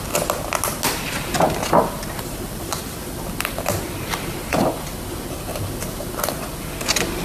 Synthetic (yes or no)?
no